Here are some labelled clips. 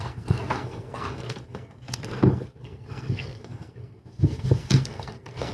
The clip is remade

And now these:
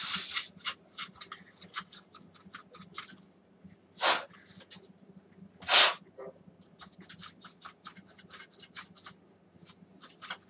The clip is recorded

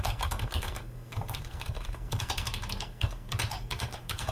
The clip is remade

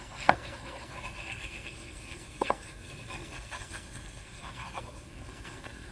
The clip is remade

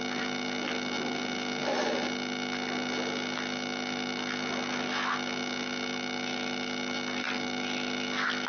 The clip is recorded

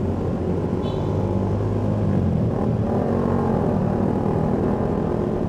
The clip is recorded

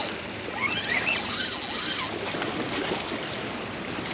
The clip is recorded